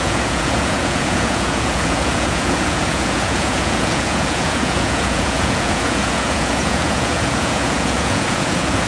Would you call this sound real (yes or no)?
no